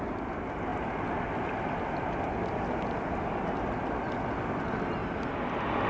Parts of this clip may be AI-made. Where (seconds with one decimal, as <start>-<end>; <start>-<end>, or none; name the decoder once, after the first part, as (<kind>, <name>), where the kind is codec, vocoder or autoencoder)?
none